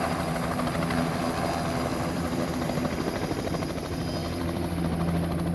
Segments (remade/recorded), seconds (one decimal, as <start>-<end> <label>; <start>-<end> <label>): 0.0-1.9 recorded; 1.9-2.5 remade; 2.5-4.2 recorded; 4.2-4.8 remade; 4.8-5.5 recorded